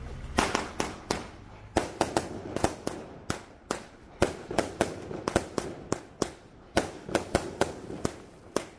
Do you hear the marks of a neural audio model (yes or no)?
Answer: no